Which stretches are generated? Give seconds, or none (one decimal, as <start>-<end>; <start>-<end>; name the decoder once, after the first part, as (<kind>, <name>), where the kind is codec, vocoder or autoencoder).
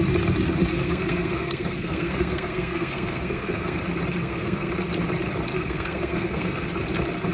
0.7-3.8 (codec, SNAC); 4.2-4.7; 5.5-6.7